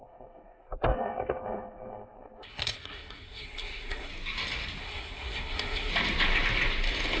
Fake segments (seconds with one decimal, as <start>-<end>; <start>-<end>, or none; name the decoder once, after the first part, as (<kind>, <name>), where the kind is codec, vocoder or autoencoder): 0.0-4.1 (codec, SNAC); 4.8-5.9